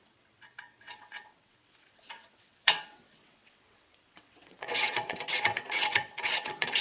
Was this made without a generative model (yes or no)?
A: no